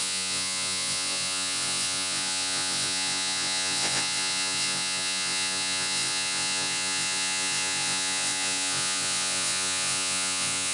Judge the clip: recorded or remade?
remade